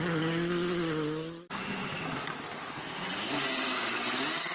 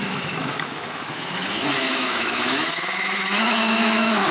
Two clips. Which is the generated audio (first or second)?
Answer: second